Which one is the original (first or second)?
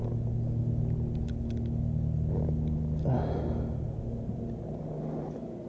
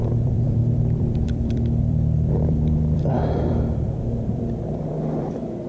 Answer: first